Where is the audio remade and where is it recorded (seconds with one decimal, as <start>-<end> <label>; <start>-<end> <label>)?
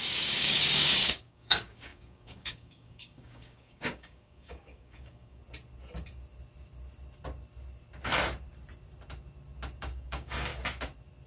0.0-5.4 remade; 5.4-9.8 recorded; 9.8-10.5 remade; 10.5-11.3 recorded